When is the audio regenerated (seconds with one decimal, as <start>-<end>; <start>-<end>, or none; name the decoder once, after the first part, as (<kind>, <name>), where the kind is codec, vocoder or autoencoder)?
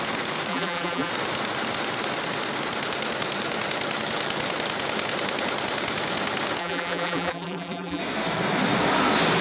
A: 0.5-1.1 (vocoder, BigVGAN v2); 6.6-8.0